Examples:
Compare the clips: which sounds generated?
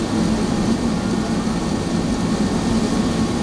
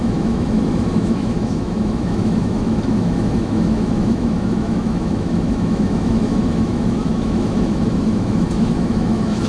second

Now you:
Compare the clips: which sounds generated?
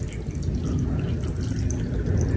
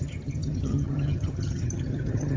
second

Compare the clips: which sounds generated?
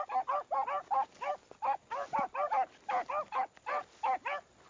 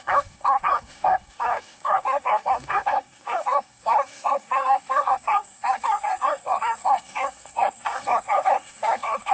second